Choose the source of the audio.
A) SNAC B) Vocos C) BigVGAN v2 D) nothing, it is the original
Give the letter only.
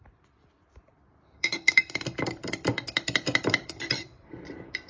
C